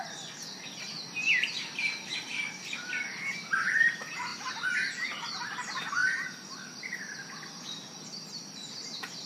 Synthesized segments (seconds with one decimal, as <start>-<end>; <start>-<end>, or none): 4.3-5.3